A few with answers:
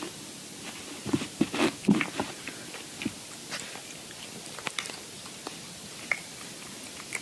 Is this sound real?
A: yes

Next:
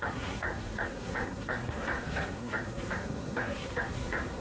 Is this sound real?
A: no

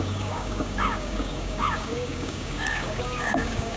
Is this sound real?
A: no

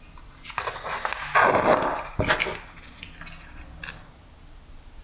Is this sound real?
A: yes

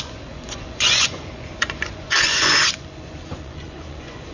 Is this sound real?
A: no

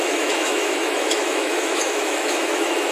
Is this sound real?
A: no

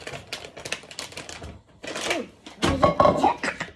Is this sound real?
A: yes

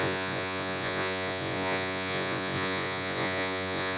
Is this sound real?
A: no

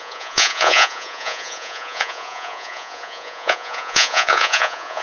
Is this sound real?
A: no